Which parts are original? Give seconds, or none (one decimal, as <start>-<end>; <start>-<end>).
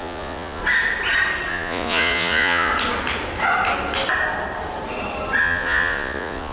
0.6-1.5; 2.7-5.4